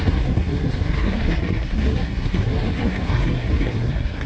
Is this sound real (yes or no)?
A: no